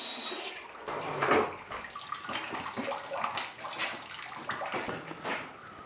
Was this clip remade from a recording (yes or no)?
no